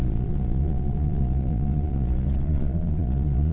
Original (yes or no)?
no